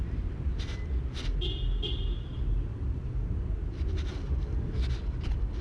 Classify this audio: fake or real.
real